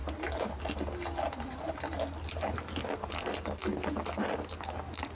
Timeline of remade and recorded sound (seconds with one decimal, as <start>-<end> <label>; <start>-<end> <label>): 0.0-5.1 recorded